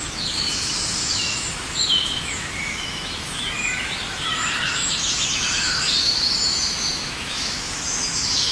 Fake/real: fake